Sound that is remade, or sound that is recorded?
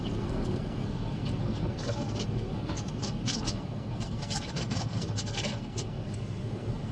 remade